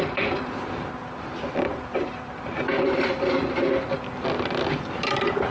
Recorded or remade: remade